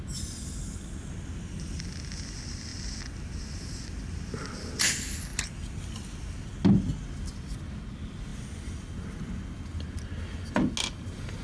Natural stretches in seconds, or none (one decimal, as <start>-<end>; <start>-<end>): 0.0-11.4